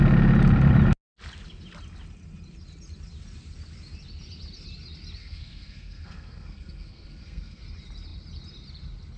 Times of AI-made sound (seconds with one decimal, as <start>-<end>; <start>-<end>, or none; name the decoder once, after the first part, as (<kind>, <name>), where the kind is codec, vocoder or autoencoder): 5.2-7.6 (codec, SNAC)